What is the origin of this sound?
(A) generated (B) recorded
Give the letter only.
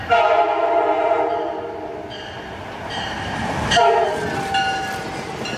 B